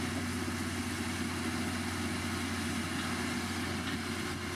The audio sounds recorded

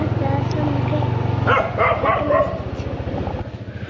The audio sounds recorded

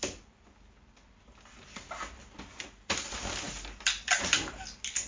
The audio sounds recorded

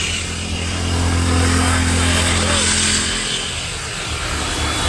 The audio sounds recorded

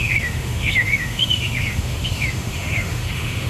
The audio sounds remade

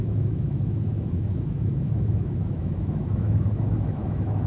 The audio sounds remade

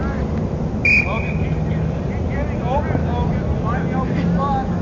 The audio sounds recorded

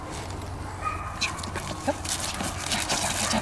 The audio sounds recorded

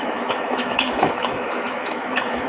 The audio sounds remade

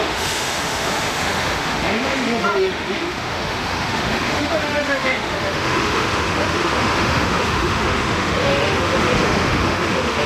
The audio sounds remade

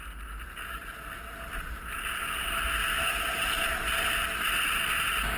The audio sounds recorded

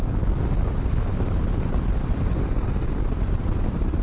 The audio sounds recorded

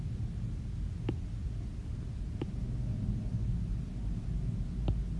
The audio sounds recorded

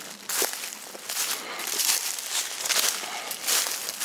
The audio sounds recorded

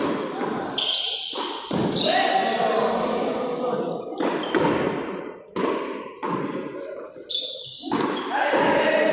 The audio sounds recorded